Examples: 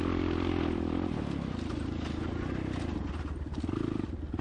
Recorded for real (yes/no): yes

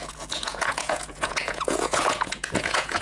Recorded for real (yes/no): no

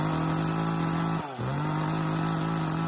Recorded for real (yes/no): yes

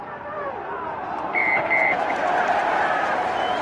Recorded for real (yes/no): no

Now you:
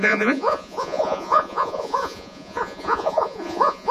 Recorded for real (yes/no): no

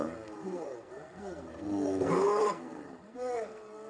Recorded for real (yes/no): no